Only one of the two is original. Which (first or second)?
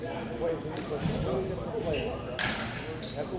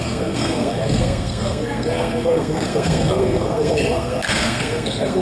first